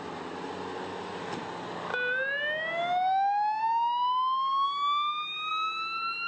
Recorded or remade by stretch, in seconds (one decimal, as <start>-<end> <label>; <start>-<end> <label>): 0.0-6.3 recorded